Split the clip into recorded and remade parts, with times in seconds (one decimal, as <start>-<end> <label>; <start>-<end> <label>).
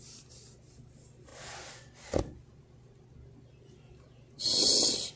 0.0-5.2 recorded